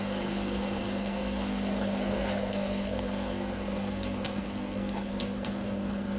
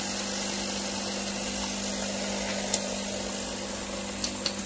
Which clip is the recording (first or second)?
second